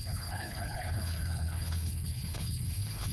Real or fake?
fake